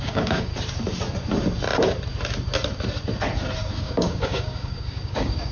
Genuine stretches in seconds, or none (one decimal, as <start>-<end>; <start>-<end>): 0.5-3.8